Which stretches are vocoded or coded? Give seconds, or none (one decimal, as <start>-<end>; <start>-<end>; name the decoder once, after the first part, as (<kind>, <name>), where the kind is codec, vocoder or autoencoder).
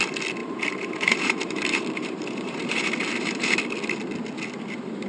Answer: 0.4-3.5 (vocoder, BigVGAN v2)